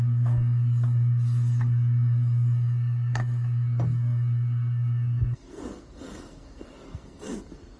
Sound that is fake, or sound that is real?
fake